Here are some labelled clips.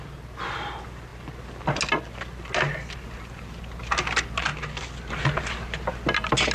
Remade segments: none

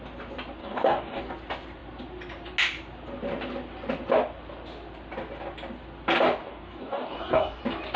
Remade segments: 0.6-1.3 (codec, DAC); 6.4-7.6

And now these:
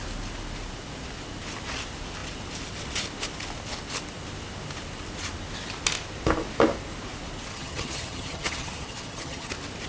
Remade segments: 7.5-9.5 (vocoder, HiFi-GAN)

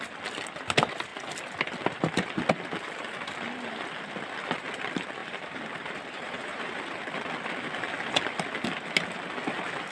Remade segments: 5.2-6.8 (vocoder, BigVGAN v2)

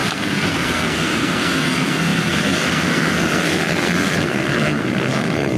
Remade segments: 0.0-5.6 (codec, SNAC)

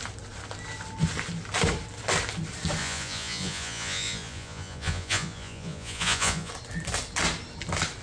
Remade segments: 2.8-6.5 (vocoder, Vocos)

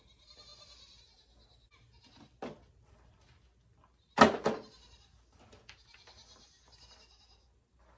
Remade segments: none

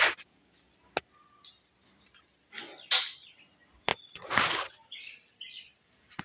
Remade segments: none